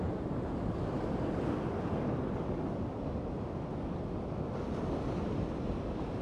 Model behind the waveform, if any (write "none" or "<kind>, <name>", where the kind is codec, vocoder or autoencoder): none